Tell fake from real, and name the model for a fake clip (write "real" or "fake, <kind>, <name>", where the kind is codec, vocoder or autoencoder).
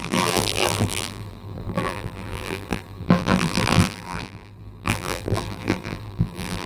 fake, vocoder, BigVGAN v2